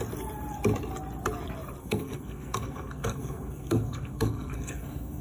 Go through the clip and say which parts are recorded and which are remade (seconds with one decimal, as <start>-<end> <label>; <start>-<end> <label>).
0.0-1.8 recorded; 1.8-5.2 remade